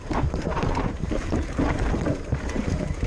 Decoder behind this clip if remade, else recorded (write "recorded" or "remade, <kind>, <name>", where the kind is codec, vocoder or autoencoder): remade, vocoder, BigVGAN v2